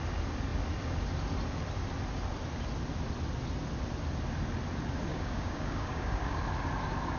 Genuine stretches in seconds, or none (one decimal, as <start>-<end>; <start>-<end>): 0.0-5.1; 6.4-7.2